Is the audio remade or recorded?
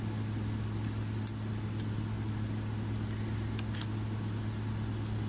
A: recorded